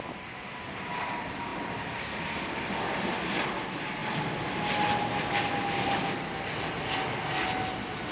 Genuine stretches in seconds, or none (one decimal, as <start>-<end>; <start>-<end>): 0.0-8.1